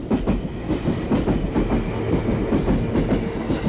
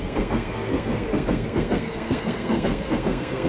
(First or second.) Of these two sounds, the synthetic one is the second